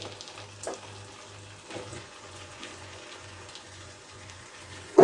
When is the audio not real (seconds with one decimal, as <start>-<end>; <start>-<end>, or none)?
1.9-5.0